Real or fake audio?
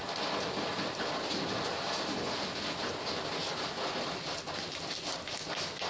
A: real